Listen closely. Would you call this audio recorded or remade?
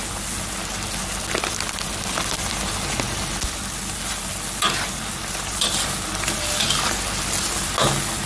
recorded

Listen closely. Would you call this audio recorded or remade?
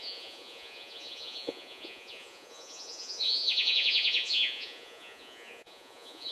remade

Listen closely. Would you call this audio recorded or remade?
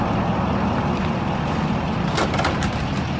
recorded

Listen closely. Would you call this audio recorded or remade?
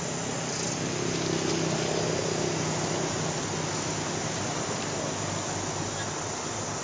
recorded